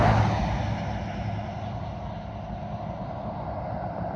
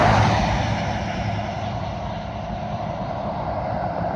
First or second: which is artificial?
second